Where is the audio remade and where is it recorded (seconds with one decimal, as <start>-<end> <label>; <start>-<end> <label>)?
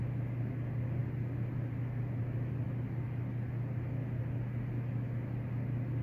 0.0-6.0 recorded